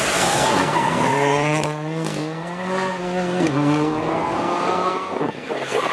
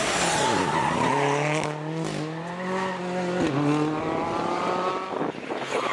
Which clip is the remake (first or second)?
first